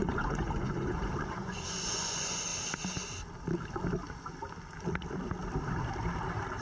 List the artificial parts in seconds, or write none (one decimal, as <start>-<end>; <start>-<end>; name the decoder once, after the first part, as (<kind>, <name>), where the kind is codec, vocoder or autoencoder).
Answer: 0.0-2.5 (vocoder, Vocos)